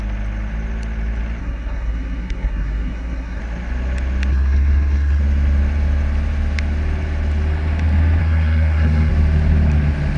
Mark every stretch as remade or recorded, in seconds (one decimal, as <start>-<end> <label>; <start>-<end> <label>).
0.0-1.4 recorded; 1.4-3.4 remade; 3.4-4.3 recorded; 4.3-5.2 remade; 5.2-8.2 recorded; 8.2-9.1 remade; 9.1-10.2 recorded